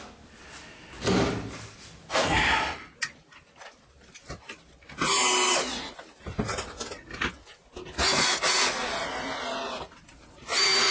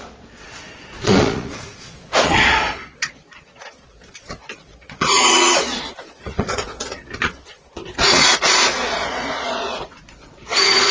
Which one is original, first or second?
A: first